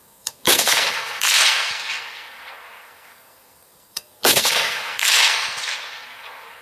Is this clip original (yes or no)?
no